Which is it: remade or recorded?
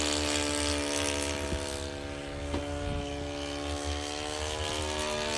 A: recorded